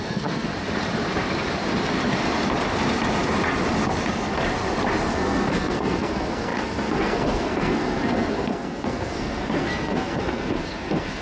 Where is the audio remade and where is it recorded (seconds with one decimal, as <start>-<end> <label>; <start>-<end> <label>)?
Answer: 0.0-0.5 remade; 0.5-5.1 recorded; 5.1-11.2 remade